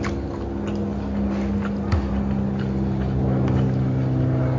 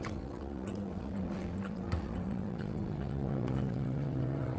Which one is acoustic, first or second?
first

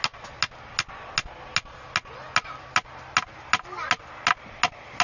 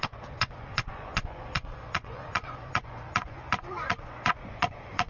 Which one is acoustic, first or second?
first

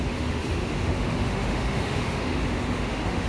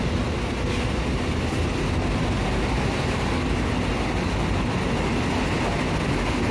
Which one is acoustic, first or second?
second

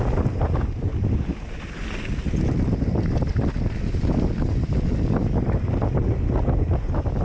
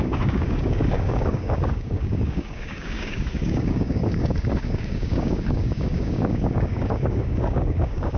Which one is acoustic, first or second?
first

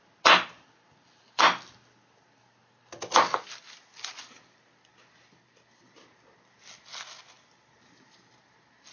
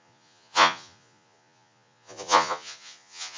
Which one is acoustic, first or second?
first